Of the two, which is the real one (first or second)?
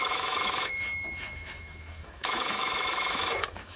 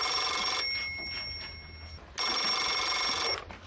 second